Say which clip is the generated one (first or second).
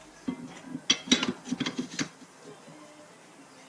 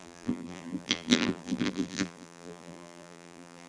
second